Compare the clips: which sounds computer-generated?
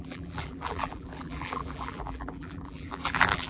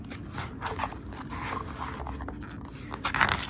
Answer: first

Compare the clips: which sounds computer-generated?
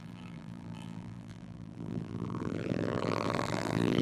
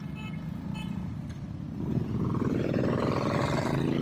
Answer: first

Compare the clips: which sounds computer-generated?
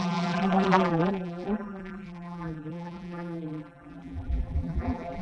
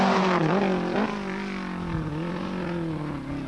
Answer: first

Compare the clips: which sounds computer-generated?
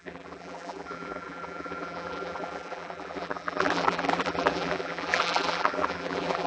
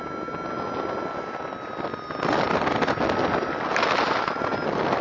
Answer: first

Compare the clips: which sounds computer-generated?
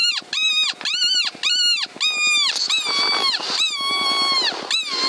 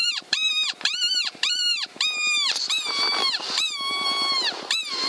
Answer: second